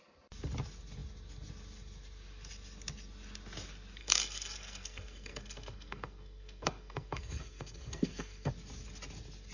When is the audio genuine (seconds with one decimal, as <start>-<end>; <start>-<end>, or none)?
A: 0.0-4.0; 8.5-9.5